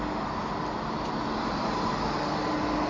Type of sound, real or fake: real